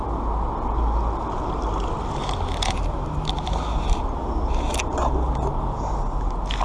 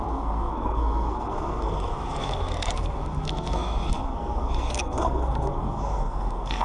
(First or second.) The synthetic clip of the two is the second